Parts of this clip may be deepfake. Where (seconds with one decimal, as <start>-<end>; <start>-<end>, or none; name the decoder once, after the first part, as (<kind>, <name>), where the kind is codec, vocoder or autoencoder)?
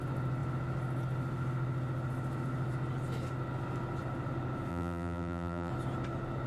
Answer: 4.7-5.7 (vocoder, BigVGAN v2)